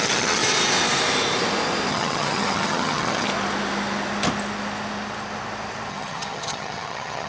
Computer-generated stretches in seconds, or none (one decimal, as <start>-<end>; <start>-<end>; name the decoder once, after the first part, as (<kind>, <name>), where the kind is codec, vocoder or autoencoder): 0.0-0.4 (vocoder, HiFi-GAN); 1.9-3.3; 5.9-7.3

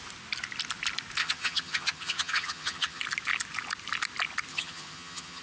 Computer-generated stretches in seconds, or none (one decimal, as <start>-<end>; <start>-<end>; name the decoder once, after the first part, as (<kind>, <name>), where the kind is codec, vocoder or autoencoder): 1.2-3.0 (vocoder, HiFi-GAN); 4.5-5.4

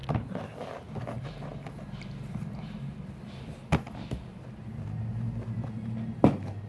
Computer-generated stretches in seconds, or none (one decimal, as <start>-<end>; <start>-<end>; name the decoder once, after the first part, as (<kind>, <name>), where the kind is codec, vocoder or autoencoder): none

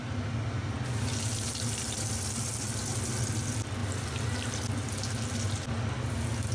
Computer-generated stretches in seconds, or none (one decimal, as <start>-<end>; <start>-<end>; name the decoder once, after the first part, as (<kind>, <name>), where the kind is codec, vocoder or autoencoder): 3.8-4.5 (vocoder, BigVGAN v2)

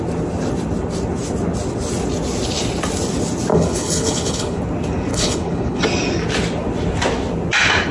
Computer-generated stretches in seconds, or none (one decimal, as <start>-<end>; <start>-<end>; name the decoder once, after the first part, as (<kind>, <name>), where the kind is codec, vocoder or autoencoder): 3.5-4.6 (codec, HILCodec); 5.1-5.8

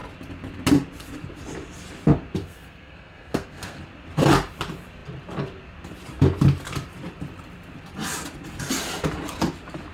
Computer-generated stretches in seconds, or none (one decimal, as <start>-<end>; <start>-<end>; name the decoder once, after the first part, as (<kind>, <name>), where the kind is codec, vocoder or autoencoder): 2.4-3.8 (codec, SNAC)